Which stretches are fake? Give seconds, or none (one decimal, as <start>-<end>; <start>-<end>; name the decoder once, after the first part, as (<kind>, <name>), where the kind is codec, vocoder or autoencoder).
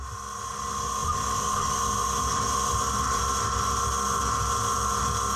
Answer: none